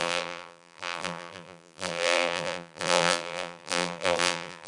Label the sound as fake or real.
fake